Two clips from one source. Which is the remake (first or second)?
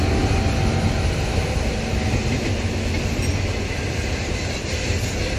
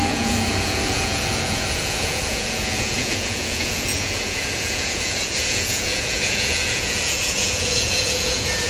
second